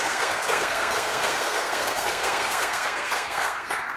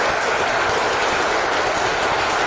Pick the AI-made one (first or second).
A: first